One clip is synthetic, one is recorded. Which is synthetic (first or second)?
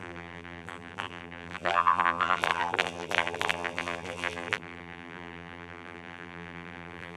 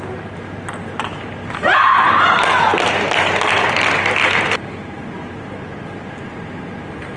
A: first